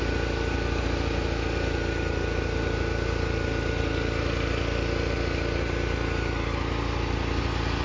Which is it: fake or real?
real